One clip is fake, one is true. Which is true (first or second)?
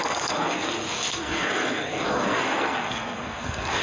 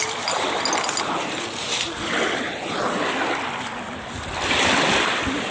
second